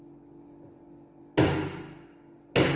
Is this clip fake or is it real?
real